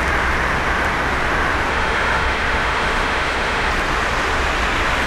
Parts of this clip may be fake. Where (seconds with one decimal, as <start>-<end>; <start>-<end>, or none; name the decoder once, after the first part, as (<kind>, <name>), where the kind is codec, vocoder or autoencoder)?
1.7-3.7 (autoencoder, DAC-VAE)